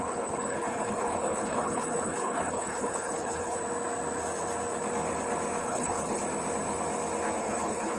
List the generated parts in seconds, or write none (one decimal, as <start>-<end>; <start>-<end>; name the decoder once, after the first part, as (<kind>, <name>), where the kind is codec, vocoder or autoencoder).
0.0-3.6 (codec, HILCodec); 5.6-6.2; 7.4-8.0

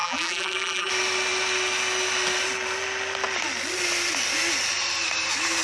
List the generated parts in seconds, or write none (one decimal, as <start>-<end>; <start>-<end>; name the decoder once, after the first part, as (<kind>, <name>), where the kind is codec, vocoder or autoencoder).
0.0-0.9 (vocoder, BigVGAN v2)

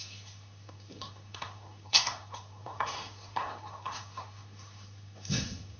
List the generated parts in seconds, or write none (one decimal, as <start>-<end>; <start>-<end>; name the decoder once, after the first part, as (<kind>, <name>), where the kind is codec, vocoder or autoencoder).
0.0-5.8 (codec, SNAC)

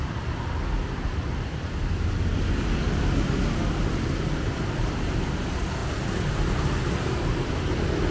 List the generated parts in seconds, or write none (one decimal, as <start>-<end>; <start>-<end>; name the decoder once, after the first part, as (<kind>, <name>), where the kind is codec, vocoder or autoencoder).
none

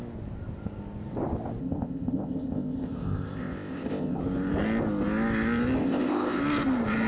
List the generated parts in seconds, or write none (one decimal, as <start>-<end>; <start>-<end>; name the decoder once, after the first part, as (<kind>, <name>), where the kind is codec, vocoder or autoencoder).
1.6-4.2 (codec, ZipCodec); 5.8-6.4

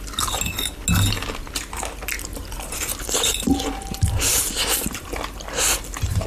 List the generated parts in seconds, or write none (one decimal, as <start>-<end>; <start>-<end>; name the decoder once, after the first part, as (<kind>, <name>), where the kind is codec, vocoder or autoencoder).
2.3-6.3 (vocoder, BigVGAN v2)

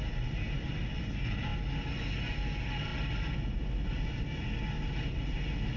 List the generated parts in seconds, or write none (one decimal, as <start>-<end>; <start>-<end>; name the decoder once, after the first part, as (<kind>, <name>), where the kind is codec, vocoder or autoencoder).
none